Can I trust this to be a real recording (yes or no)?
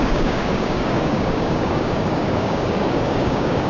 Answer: no